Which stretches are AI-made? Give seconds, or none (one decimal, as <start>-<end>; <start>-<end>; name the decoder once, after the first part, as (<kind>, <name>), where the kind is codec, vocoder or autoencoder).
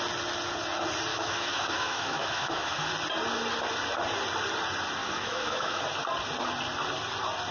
1.1-2.9 (autoencoder, DAC-VAE); 5.0-5.8